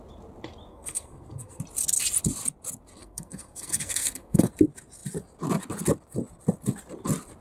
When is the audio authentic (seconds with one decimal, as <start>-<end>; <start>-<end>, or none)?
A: 0.0-0.7; 1.6-3.0; 4.5-7.4